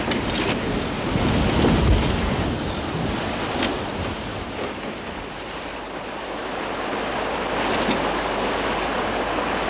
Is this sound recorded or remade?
recorded